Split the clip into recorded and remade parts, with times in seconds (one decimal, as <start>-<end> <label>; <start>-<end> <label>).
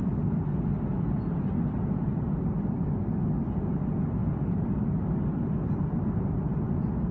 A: 0.0-7.1 recorded